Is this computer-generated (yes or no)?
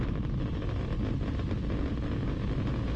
no